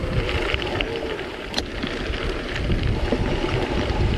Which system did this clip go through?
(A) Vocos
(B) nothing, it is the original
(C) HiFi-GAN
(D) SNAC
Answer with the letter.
B